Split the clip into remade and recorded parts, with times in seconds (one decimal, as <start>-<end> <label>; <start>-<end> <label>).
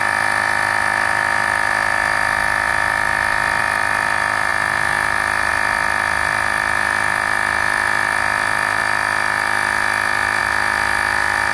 0.0-11.5 recorded